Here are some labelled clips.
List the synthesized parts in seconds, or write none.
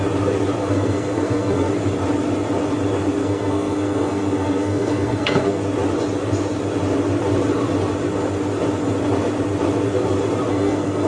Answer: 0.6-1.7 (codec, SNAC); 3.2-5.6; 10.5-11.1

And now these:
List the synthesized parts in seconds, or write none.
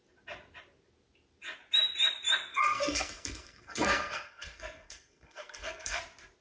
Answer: 2.5-6.0 (codec, SNAC)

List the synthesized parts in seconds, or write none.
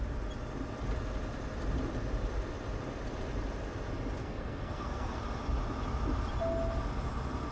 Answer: 4.2-5.2 (codec, SNAC)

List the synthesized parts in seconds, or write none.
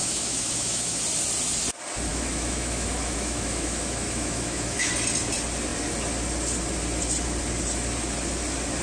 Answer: 0.0-1.0 (autoencoder, DAC-VAE); 2.1-4.9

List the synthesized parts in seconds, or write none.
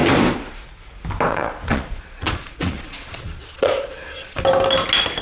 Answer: 1.3-4.4 (vocoder, Vocos)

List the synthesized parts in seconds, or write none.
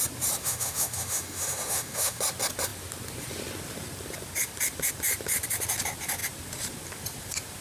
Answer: 0.4-2.2 (autoencoder, DAC-VAE)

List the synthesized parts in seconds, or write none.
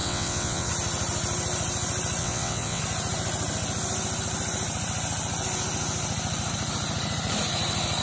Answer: 0.0-0.7 (vocoder, WaveNeXt); 2.2-2.8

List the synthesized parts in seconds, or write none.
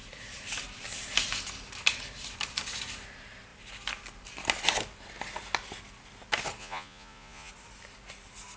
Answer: 6.6-7.5 (vocoder, Vocos)